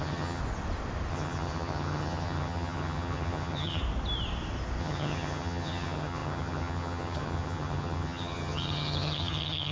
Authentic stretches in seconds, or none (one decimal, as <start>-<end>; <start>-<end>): 0.4-1.1; 3.8-4.8